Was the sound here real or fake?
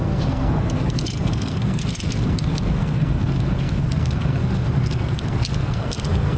fake